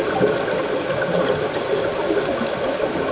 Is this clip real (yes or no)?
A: yes